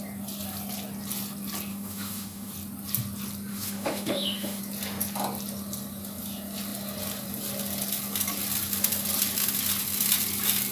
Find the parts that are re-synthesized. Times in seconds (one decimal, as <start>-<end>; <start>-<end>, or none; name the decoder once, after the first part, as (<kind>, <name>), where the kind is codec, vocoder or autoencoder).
1.7-2.5 (autoencoder, DAC-VAE); 3.5-4.6